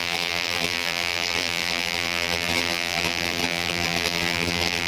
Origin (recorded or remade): remade